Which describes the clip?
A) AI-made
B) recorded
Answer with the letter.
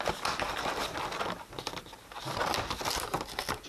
B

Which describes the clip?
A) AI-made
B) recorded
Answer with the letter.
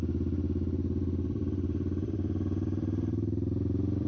A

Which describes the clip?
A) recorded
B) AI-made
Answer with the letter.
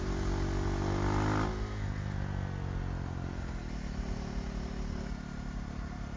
A